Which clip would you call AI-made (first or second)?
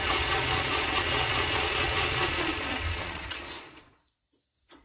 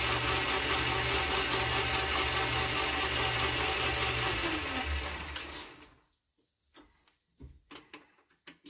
first